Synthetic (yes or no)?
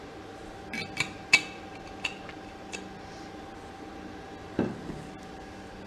no